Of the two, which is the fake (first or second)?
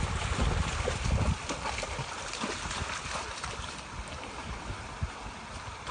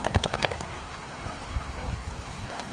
second